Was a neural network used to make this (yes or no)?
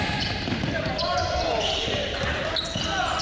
yes